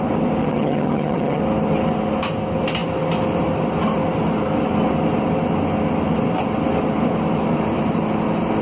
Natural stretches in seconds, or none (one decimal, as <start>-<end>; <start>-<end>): 0.0-0.4; 1.4-8.6